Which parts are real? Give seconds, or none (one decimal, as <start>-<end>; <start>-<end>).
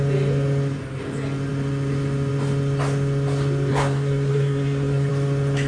0.0-3.7; 5.1-5.7